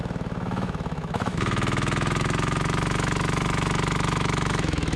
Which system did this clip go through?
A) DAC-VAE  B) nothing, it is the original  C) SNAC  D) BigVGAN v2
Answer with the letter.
A